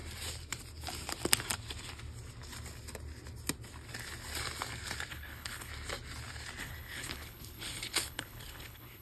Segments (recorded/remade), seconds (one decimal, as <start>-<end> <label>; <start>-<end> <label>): 0.0-5.1 recorded; 5.1-5.7 remade; 5.7-6.6 recorded; 6.6-9.0 remade